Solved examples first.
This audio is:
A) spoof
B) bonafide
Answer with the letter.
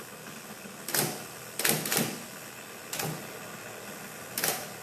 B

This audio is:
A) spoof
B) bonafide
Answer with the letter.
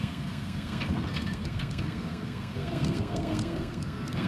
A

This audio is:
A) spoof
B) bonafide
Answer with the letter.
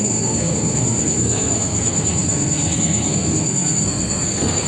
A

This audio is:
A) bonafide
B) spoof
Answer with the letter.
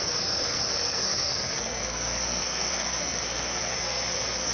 B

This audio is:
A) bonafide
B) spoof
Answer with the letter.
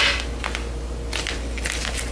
A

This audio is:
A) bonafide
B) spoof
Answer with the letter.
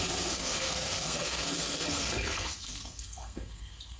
B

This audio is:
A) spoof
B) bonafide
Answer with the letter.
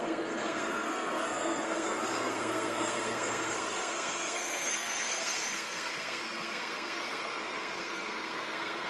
A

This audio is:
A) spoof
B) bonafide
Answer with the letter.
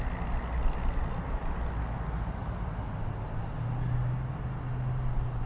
B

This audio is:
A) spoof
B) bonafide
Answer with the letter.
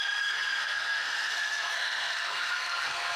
A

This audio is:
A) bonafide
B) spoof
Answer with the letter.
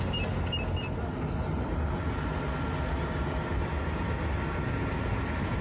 A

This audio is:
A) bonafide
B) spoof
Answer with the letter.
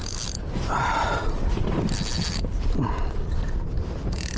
A